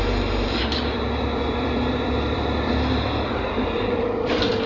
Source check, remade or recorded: remade